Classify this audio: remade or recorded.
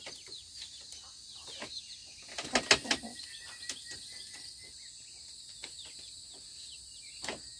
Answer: recorded